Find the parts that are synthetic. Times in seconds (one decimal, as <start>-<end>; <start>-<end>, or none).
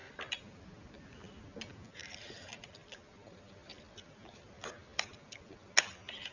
none